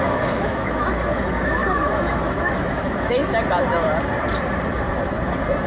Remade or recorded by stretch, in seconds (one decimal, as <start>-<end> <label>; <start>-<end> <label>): 0.0-3.2 remade; 3.2-5.7 recorded

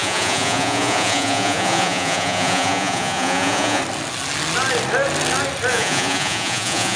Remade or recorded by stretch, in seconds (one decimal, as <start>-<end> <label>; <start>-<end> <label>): 0.0-3.8 remade; 3.8-5.7 recorded; 5.7-7.0 remade